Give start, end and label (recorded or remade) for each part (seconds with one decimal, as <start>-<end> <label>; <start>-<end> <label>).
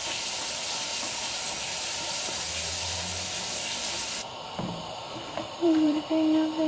0.0-4.3 recorded; 4.3-6.0 remade; 6.0-6.7 recorded